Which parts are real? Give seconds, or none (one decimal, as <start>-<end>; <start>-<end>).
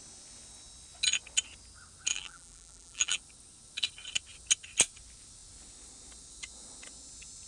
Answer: 0.0-2.1; 3.2-7.5